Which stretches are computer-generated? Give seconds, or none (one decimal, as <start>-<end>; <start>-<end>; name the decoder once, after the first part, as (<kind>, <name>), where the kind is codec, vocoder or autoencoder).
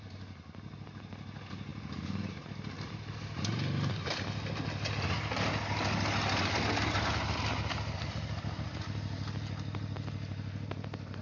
none